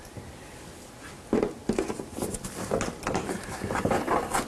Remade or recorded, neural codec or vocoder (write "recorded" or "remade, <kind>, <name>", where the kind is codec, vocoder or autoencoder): recorded